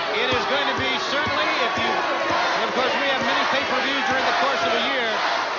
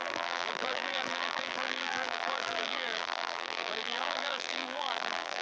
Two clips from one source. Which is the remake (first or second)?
second